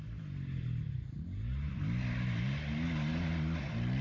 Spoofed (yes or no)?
no